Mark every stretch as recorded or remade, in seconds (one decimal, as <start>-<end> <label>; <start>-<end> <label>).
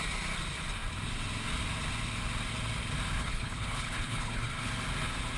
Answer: 0.0-3.2 recorded; 3.2-4.7 remade; 4.7-5.4 recorded